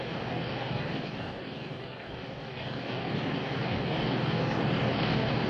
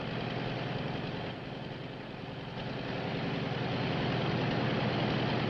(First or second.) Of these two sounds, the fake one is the first